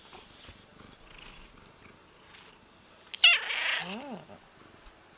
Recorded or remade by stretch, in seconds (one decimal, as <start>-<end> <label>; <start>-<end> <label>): 0.0-5.2 recorded